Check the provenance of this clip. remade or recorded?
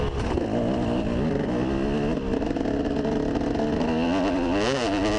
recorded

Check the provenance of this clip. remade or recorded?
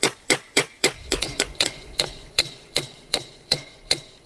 remade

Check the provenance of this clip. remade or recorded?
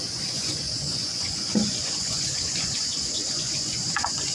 remade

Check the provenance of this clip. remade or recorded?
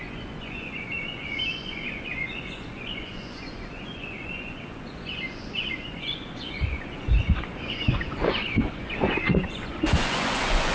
remade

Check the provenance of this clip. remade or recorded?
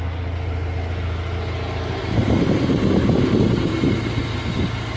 recorded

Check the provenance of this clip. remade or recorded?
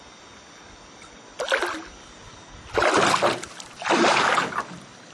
recorded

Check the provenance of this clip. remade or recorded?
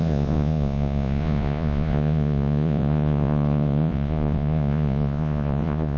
remade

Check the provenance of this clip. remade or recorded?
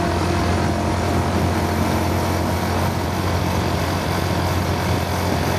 recorded